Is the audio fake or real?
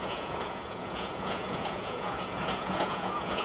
fake